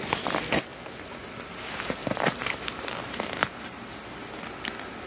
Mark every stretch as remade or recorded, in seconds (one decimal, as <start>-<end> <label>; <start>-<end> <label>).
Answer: 0.0-2.0 recorded; 2.0-4.3 remade; 4.3-5.1 recorded